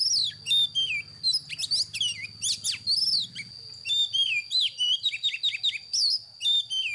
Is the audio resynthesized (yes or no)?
no